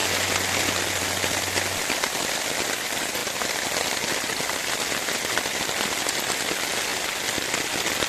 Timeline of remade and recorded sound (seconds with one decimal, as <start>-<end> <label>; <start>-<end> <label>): 0.0-3.2 recorded; 3.2-6.0 remade; 6.0-8.1 recorded